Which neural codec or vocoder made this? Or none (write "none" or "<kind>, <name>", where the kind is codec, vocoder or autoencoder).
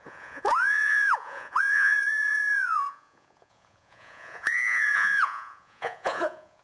vocoder, Vocos